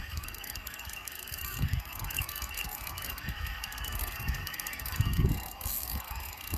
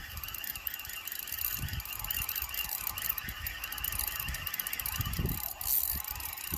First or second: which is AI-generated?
first